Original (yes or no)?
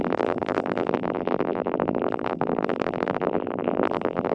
no